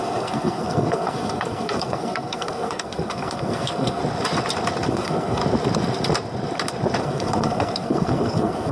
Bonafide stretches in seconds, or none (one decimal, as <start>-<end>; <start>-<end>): 4.0-4.9; 5.4-7.0